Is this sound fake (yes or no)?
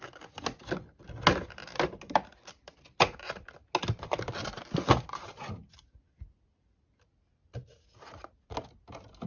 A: no